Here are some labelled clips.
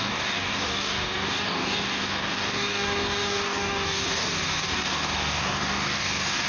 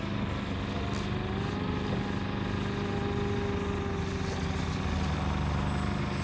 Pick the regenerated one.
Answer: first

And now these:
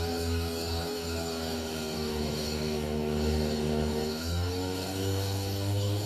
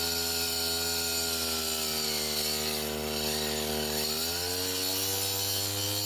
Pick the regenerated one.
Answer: first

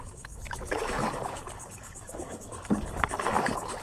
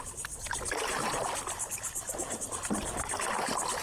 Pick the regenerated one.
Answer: first